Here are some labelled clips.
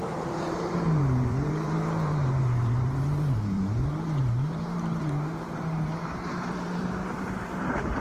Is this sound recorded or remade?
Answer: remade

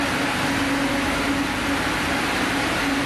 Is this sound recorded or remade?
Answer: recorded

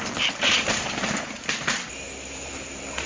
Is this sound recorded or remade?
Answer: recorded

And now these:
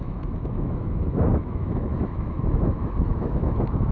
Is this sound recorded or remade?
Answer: remade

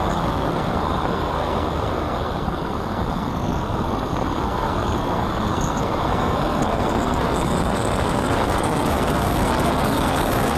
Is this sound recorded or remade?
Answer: remade